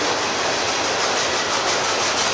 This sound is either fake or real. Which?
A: real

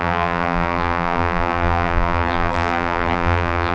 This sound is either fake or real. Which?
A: fake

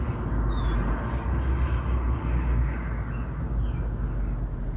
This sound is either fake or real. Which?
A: real